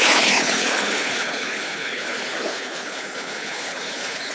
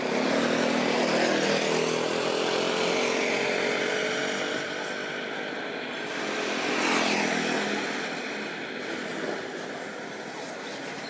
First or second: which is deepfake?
first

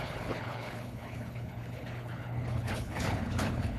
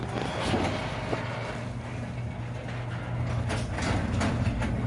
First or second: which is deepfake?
first